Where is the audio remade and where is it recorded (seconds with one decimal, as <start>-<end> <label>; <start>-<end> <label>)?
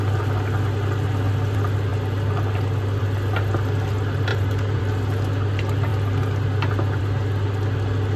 0.0-4.3 recorded; 4.3-4.8 remade; 4.8-8.2 recorded